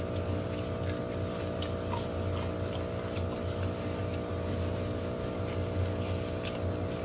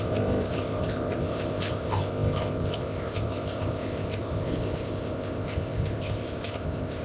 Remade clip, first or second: second